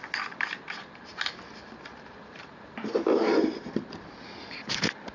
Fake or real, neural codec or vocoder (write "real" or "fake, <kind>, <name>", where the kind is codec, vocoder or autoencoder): real